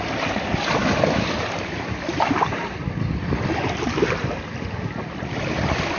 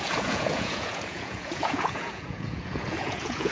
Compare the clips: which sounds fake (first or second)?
second